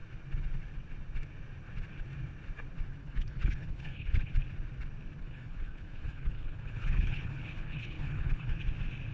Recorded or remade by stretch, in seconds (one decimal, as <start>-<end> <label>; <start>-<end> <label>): 0.0-3.0 recorded; 3.0-4.3 remade; 4.3-5.2 recorded; 5.2-8.6 remade; 8.6-9.1 recorded